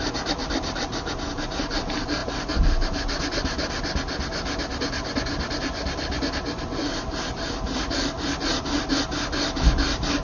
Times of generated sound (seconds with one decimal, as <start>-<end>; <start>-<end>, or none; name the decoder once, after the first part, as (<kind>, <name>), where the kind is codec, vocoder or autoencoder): none